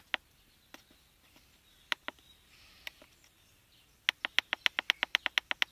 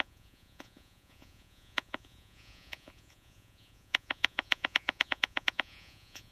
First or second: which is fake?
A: second